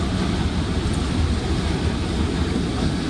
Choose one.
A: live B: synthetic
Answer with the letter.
A